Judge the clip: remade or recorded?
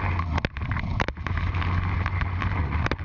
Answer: recorded